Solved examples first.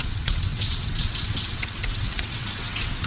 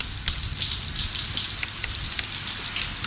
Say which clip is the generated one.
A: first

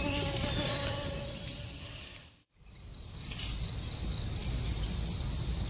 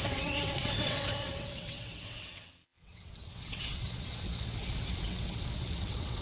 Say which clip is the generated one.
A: second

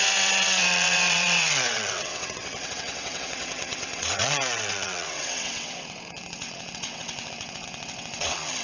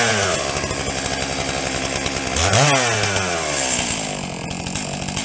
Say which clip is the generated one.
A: first